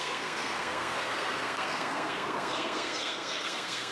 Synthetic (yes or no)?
yes